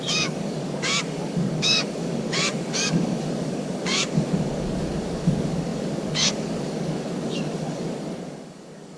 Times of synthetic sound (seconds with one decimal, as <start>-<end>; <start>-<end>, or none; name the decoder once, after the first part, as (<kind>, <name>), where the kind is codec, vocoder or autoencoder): 0.0-9.0 (codec, DAC)